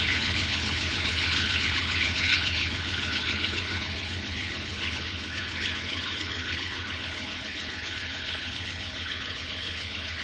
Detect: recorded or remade remade